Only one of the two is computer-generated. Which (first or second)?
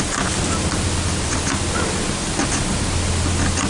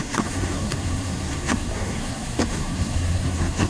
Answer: second